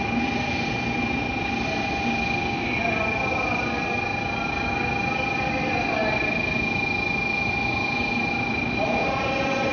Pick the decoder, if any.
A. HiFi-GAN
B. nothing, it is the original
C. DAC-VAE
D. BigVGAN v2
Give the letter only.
B